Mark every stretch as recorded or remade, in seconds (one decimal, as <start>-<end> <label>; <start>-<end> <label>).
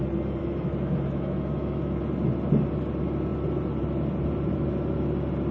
0.0-0.4 recorded; 0.4-2.0 remade; 2.0-5.5 recorded